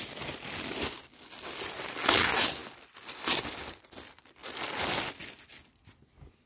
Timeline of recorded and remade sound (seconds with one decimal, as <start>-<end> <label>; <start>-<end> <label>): 0.0-6.5 recorded